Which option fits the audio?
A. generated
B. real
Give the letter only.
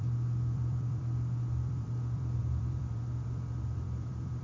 A